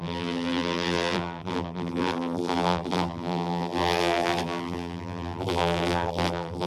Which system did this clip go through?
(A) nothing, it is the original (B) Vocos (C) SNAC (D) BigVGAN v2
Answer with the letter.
D